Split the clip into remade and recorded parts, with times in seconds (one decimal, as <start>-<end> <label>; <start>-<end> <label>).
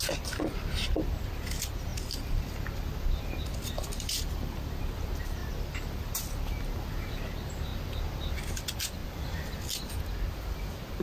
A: 0.0-1.9 recorded; 1.9-4.8 remade; 4.8-5.4 recorded; 5.4-7.1 remade; 7.1-11.0 recorded